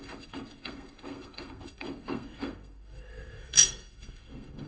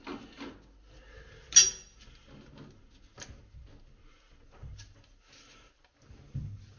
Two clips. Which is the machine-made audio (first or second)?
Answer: first